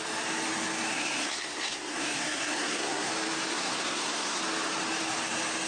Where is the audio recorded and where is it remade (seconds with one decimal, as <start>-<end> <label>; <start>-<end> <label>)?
0.0-0.9 recorded; 0.9-3.1 remade; 3.1-3.5 recorded; 3.5-4.4 remade; 4.4-5.7 recorded